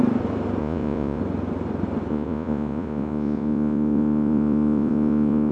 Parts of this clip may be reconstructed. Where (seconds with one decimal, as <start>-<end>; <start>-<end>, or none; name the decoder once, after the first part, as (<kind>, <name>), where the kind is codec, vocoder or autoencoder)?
0.6-1.2 (vocoder, Vocos); 2.1-5.5